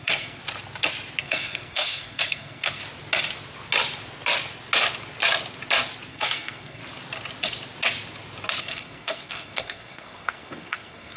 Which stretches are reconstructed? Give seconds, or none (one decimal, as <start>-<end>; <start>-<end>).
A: 0.0-0.4; 1.2-2.8; 6.1-6.8; 8.6-11.2